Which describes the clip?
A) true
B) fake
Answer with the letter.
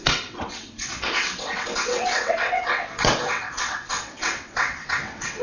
B